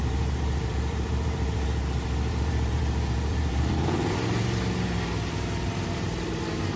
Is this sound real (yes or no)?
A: no